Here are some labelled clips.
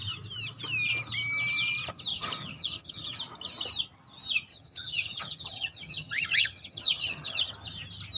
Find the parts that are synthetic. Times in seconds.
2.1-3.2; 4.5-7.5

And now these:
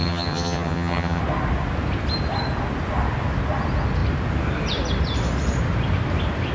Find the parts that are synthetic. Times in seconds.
0.0-1.2

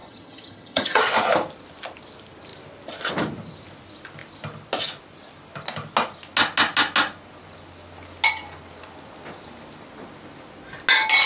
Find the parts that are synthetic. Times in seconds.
0.0-1.0

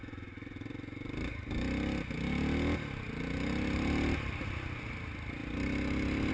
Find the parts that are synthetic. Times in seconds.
none

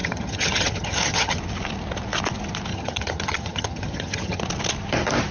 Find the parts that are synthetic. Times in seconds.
0.0-1.4; 2.7-4.4